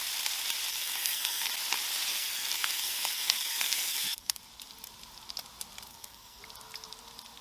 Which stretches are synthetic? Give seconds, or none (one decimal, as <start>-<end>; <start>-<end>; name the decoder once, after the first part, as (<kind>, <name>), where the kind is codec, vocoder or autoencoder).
0.7-1.5 (codec, SNAC); 2.1-4.4; 5.9-6.4

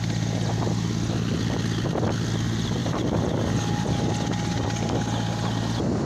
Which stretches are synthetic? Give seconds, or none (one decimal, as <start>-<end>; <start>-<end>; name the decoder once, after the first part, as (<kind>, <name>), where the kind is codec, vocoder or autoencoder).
2.8-4.1 (vocoder, BigVGAN v2)

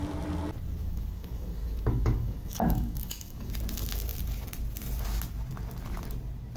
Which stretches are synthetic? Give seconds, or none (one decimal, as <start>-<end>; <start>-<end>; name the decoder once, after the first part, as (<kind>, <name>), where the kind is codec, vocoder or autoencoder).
0.8-3.5 (codec, DAC)

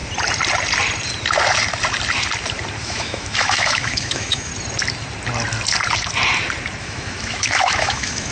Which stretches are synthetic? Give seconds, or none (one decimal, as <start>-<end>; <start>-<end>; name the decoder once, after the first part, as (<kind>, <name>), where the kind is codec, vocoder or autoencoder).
2.8-4.5 (autoencoder, DAC-VAE); 6.8-8.3

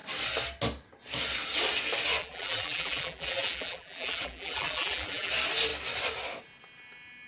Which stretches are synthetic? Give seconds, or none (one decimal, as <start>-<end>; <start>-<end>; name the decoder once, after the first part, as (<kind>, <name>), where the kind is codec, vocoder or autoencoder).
2.2-5.3 (vocoder, BigVGAN v2)